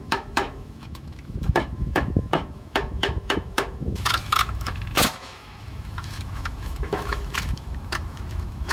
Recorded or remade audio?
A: remade